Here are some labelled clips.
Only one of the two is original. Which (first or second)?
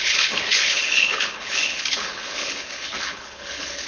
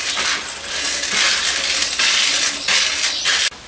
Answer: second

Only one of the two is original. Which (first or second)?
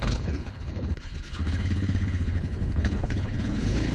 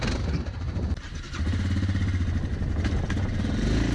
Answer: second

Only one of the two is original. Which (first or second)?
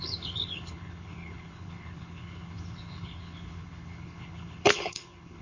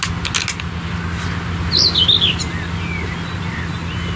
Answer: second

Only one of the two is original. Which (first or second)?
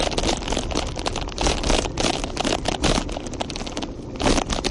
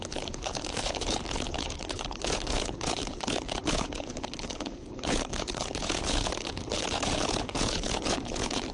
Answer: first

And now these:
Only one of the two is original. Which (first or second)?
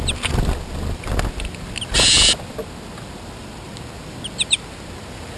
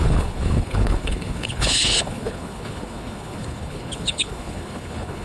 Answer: first